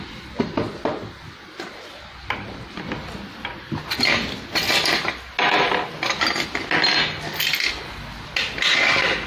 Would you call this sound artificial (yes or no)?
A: no